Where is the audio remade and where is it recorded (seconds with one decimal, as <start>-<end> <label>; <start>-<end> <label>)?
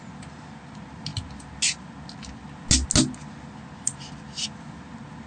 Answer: 0.0-5.3 recorded